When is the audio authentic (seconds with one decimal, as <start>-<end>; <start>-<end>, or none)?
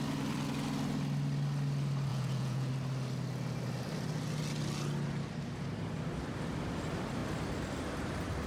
0.0-2.1; 2.7-8.5